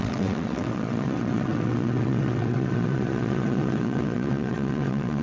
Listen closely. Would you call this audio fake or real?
fake